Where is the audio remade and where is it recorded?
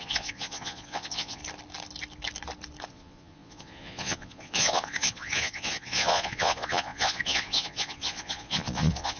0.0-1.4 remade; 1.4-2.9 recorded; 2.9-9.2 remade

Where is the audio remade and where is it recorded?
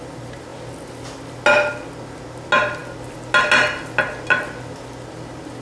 0.0-5.6 recorded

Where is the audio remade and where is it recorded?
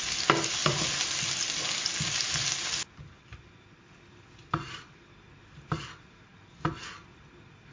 0.0-7.7 recorded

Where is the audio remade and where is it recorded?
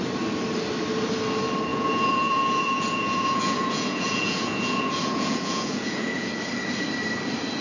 0.0-1.7 recorded; 1.7-6.3 remade; 6.3-7.6 recorded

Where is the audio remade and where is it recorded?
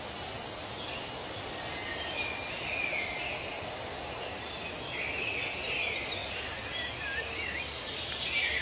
0.0-8.6 recorded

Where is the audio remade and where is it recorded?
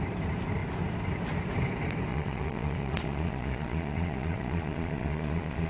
0.0-2.1 recorded; 2.1-5.7 remade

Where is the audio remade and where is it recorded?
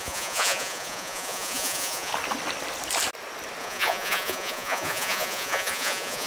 0.0-2.1 remade; 2.1-3.6 recorded; 3.6-6.3 remade